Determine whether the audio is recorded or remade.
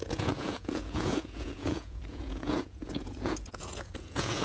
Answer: remade